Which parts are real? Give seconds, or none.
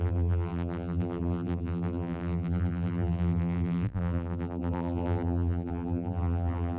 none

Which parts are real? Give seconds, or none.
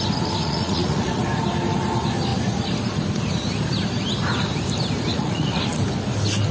0.0-0.4; 1.2-5.1; 5.6-6.5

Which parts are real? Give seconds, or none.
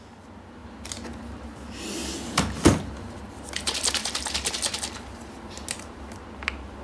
0.0-6.8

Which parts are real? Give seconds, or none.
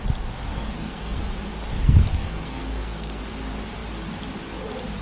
0.0-0.5; 1.2-1.7; 3.2-5.0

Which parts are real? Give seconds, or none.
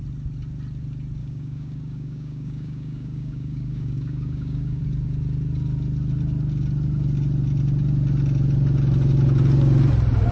0.0-1.2; 4.8-10.3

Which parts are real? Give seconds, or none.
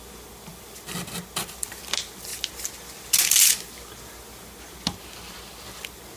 0.0-6.2